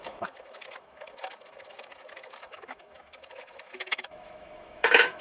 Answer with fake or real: fake